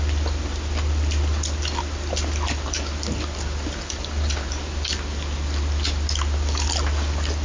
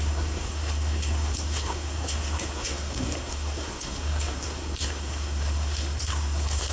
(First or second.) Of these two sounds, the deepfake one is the second